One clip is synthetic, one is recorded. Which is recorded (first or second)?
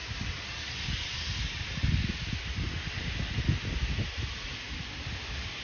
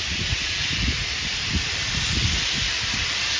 first